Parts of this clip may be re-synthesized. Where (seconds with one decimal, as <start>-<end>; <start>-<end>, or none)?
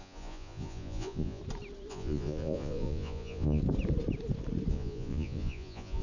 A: 0.0-1.4; 1.9-3.6; 4.7-6.0